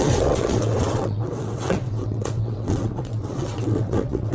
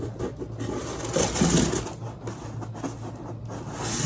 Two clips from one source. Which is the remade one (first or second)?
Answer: first